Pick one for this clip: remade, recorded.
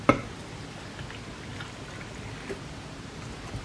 recorded